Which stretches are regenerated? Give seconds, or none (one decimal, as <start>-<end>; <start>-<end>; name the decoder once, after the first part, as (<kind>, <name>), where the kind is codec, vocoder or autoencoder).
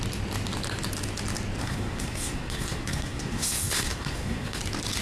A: 1.6-4.6 (codec, SNAC)